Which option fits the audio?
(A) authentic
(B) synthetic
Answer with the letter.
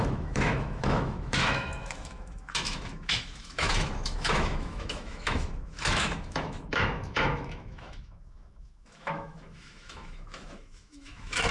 B